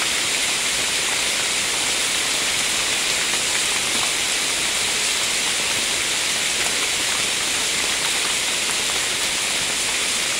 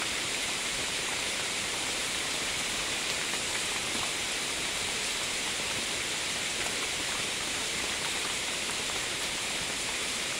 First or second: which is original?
first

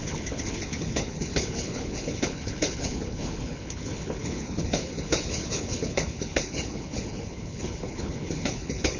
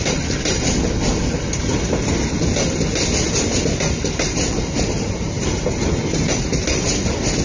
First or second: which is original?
second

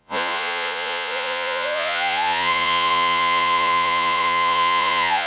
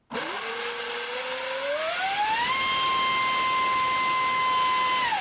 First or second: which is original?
second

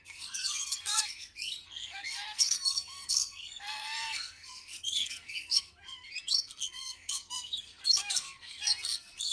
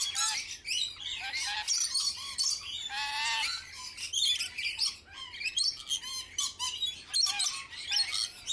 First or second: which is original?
second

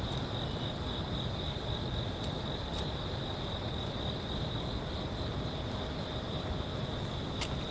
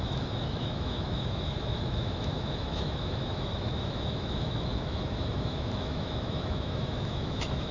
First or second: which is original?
first